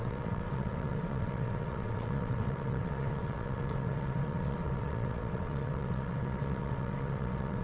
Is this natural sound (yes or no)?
no